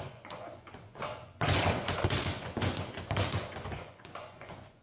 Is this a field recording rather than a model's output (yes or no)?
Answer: no